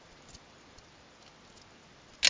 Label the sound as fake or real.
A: real